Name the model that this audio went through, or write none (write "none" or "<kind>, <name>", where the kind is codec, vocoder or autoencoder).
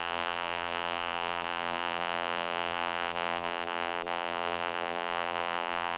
vocoder, BigVGAN v2